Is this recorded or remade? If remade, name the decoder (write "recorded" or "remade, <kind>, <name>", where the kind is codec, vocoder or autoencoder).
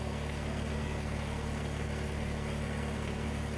remade, codec, SNAC